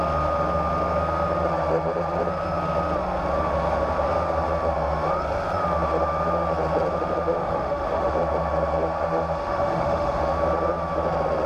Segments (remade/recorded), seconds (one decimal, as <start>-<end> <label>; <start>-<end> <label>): 0.0-7.4 recorded; 7.4-8.1 remade; 8.1-9.4 recorded; 9.4-10.2 remade; 10.2-11.5 recorded